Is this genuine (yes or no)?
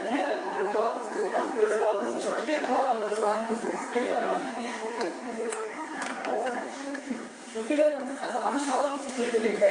no